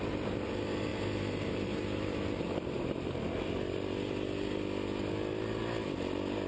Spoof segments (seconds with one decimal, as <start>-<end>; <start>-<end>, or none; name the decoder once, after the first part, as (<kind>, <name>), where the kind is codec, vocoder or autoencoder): 0.9-3.1 (vocoder, BigVGAN v2)